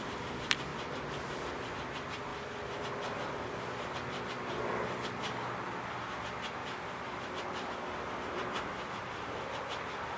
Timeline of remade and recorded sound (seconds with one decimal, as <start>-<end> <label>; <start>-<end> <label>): 0.0-0.7 recorded; 0.7-1.7 remade; 1.7-2.3 recorded; 2.3-2.8 remade; 2.8-6.6 recorded; 6.6-10.2 remade